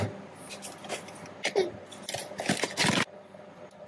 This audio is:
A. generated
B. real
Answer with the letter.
B